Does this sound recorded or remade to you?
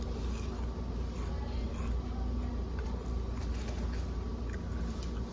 recorded